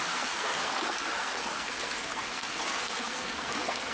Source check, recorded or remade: remade